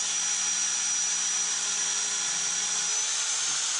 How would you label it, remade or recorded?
recorded